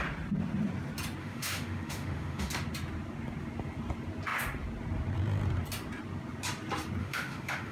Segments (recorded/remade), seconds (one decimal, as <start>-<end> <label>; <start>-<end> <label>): 0.0-1.2 recorded; 1.2-2.5 remade; 2.5-7.0 recorded; 7.0-7.7 remade